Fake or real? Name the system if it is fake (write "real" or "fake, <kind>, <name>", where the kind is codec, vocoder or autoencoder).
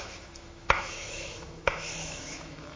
fake, autoencoder, DAC-VAE